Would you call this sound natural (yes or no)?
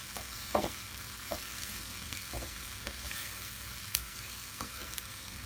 no